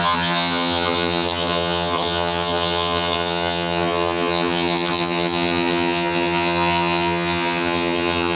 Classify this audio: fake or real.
fake